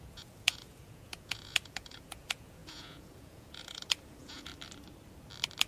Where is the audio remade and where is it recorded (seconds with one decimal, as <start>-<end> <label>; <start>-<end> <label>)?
0.0-4.5 remade; 4.5-5.7 recorded